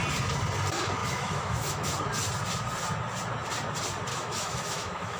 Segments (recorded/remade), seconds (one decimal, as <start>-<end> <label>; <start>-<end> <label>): 0.0-1.0 recorded; 1.0-1.9 remade; 1.9-4.1 recorded; 4.1-5.2 remade